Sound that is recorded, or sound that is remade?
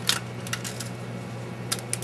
recorded